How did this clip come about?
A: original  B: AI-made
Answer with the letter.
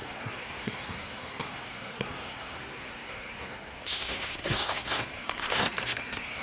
B